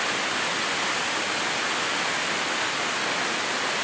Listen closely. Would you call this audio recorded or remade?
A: recorded